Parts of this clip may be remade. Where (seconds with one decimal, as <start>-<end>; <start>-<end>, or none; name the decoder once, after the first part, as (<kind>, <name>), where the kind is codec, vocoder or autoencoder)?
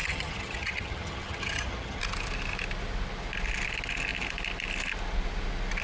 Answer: 0.0-2.0 (vocoder, HiFi-GAN)